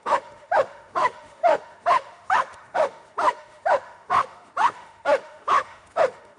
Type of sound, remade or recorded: remade